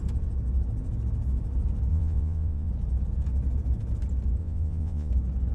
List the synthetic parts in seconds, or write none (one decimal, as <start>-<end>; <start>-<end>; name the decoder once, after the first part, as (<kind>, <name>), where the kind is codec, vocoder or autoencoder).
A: 1.9-2.7 (vocoder, Vocos); 4.4-5.1